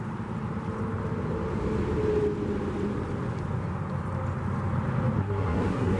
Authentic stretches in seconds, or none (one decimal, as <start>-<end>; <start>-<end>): 0.0-5.2